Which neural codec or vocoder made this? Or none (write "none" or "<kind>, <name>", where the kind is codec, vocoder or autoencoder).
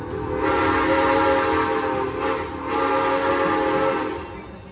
none